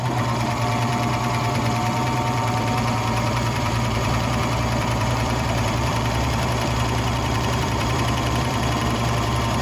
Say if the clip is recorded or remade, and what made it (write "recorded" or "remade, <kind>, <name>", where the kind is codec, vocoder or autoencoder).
remade, vocoder, BigVGAN v2